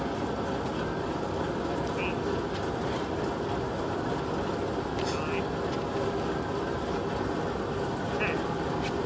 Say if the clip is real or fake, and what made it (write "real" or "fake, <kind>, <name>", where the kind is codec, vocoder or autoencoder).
real